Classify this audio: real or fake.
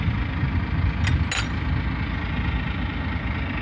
real